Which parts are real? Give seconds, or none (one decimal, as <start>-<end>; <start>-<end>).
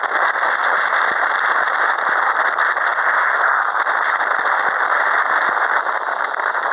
0.0-6.7